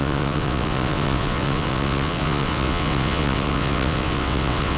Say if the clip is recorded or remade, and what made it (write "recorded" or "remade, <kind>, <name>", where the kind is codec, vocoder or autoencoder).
remade, vocoder, WaveNeXt